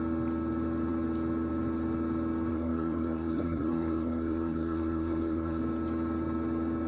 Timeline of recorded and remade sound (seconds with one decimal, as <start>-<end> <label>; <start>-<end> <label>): 0.0-2.5 recorded; 2.5-5.6 remade; 5.6-6.9 recorded